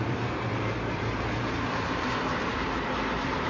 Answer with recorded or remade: remade